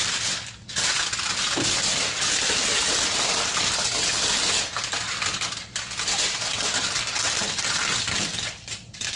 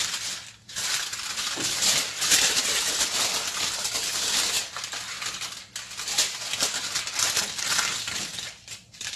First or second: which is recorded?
second